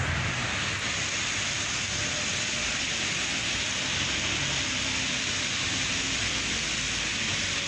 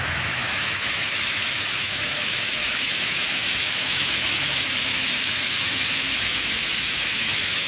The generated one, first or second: second